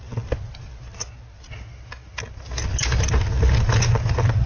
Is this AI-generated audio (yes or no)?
no